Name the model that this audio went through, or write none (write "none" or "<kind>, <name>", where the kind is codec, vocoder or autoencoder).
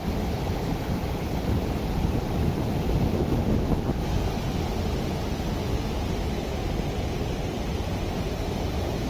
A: none